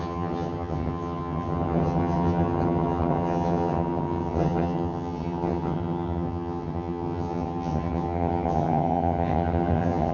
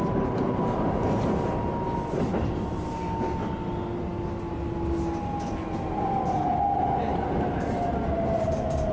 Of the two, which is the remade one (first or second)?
first